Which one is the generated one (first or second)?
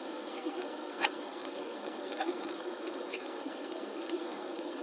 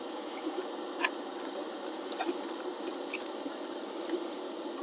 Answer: first